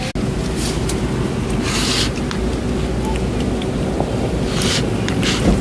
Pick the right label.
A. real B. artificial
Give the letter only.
A